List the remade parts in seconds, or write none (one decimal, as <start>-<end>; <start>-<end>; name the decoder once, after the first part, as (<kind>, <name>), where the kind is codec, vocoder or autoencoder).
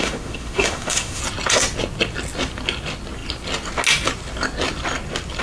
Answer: 0.0-1.2 (autoencoder, DAC-VAE)